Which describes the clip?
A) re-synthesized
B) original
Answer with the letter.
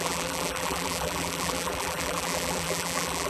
A